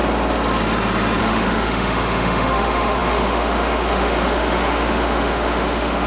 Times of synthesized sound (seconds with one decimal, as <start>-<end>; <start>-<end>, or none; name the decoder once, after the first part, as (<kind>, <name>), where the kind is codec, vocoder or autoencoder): 1.2-6.1 (autoencoder, DAC-VAE)